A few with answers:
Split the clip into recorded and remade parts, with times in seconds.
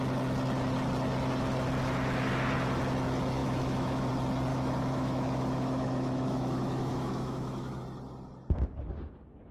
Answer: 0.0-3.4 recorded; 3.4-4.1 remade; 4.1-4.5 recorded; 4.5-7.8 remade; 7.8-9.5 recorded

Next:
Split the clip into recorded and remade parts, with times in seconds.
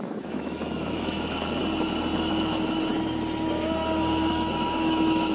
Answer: 0.0-1.6 remade; 1.6-2.3 recorded; 2.3-2.9 remade; 2.9-4.3 recorded; 4.3-5.3 remade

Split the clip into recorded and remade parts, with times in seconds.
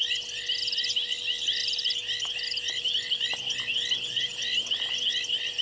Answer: 0.0-5.6 recorded